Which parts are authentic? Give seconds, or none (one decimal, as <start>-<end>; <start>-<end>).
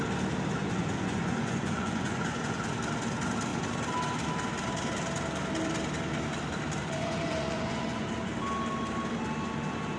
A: 0.0-0.6; 2.7-6.8; 8.1-10.0